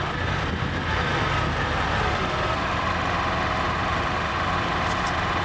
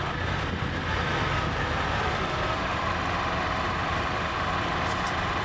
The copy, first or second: second